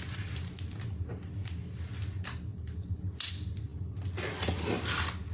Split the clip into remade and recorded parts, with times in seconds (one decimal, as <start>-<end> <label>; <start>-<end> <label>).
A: 0.0-5.3 recorded